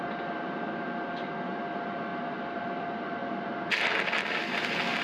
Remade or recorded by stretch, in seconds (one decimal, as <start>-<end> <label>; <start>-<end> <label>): 0.0-5.0 recorded